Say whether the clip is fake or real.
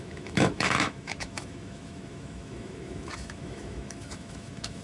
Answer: fake